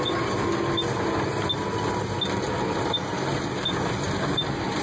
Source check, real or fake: real